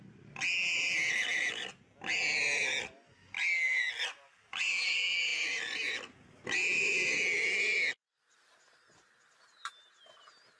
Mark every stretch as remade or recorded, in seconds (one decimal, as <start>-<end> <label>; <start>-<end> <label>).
0.0-10.6 recorded